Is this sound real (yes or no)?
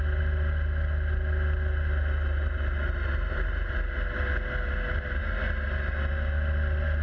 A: yes